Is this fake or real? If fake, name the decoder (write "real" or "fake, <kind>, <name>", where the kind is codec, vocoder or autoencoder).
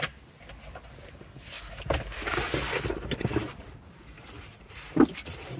real